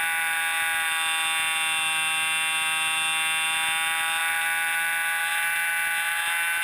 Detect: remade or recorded recorded